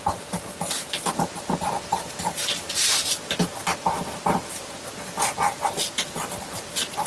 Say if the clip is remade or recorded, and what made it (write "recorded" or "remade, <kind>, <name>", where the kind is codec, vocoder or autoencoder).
recorded